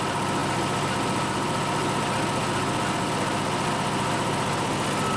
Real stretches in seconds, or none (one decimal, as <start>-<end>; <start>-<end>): 0.0-5.2